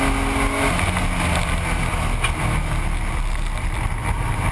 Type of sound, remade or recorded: recorded